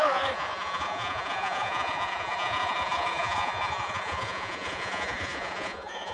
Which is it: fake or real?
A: fake